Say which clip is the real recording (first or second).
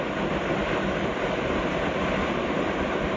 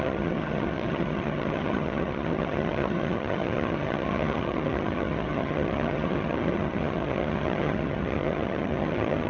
first